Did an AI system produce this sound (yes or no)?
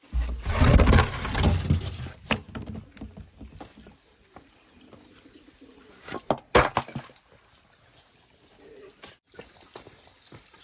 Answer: no